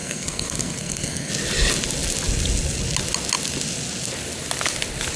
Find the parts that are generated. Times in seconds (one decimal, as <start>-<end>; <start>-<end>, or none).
0.0-1.3